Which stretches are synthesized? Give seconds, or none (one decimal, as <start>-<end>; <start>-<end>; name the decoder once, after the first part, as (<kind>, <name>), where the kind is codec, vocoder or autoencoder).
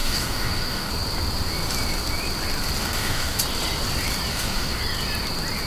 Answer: 0.0-0.9 (codec, DAC); 2.8-3.4; 4.3-4.8